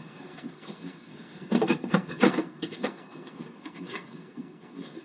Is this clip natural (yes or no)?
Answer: no